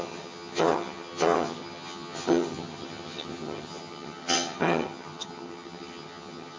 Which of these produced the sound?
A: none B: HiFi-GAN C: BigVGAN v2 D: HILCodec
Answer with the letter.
B